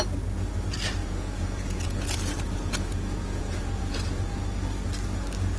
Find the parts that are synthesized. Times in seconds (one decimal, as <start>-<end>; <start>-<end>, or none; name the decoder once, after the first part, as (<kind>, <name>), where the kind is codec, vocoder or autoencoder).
1.0-4.4 (vocoder, Vocos)